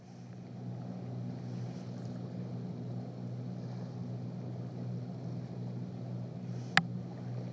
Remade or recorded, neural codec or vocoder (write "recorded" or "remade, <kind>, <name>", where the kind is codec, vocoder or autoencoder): recorded